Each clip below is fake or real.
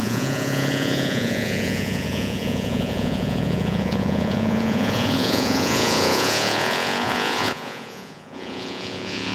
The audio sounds fake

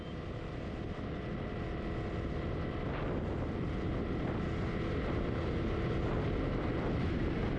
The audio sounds real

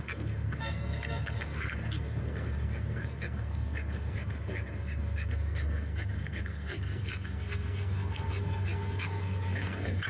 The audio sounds fake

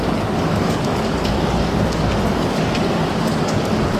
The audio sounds fake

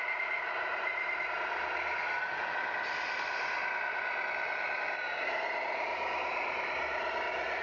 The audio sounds real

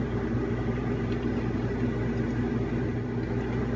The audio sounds real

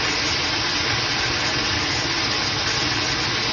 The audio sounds real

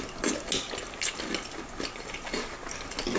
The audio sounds real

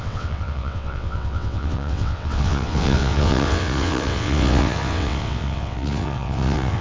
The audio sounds fake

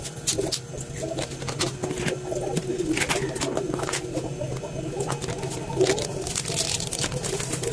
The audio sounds real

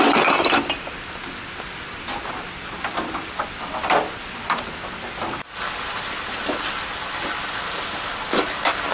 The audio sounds real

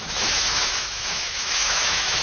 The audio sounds fake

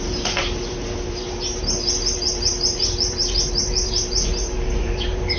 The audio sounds fake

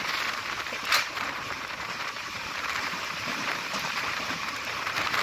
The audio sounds fake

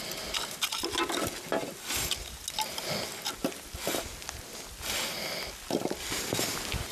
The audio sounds real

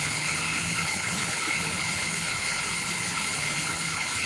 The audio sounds fake